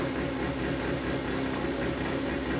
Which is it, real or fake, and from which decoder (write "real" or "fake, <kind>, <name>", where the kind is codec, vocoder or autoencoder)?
real